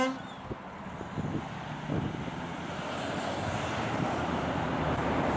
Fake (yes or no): no